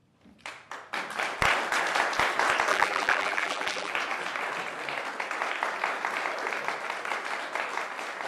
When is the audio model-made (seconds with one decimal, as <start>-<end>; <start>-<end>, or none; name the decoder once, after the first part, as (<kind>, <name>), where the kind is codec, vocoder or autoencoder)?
2.7-3.9 (vocoder, BigVGAN v2)

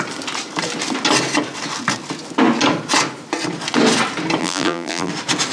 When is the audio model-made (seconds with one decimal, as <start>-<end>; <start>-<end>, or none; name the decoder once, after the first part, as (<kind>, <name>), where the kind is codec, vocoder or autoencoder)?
4.4-5.1 (vocoder, BigVGAN v2)

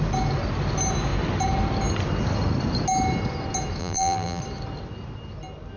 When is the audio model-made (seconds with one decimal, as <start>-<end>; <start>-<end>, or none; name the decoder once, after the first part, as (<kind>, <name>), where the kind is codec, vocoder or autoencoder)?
3.8-4.4 (vocoder, BigVGAN v2)

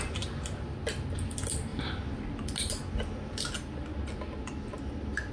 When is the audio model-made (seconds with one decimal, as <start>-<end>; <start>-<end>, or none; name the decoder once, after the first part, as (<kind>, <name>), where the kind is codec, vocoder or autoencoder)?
none